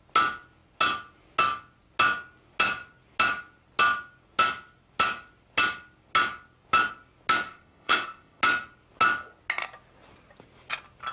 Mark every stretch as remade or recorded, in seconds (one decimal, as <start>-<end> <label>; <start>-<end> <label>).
0.0-7.5 recorded; 7.5-8.4 remade; 8.4-11.1 recorded